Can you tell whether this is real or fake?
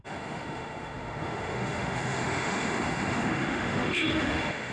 fake